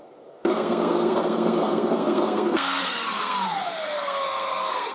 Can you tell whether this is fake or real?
fake